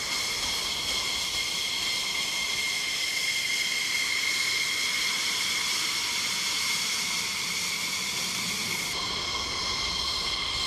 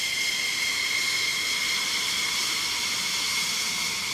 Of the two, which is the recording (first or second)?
second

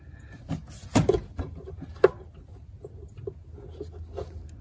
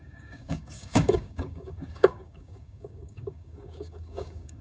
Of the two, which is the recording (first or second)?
first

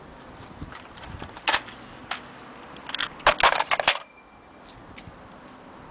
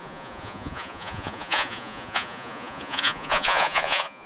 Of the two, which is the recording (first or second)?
first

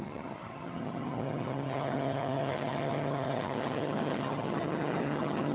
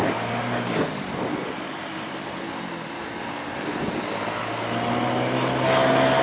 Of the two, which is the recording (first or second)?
second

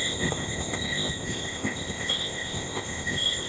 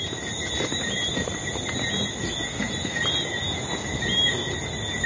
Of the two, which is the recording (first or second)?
second